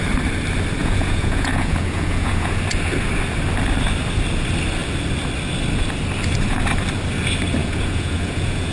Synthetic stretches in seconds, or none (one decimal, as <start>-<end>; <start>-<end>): 0.8-2.6; 7.6-8.7